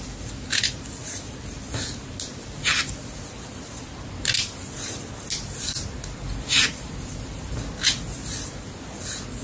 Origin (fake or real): real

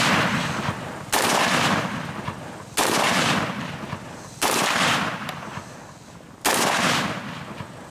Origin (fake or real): real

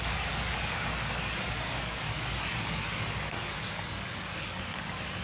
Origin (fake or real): fake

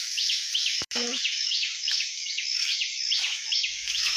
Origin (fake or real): fake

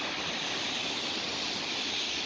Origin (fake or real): real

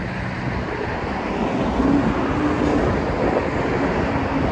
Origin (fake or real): real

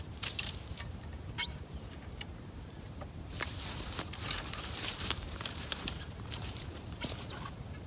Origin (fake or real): fake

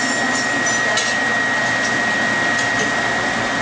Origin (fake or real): real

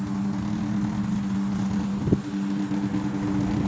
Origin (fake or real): real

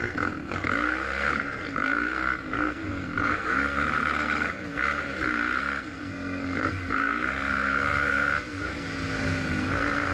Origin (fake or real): fake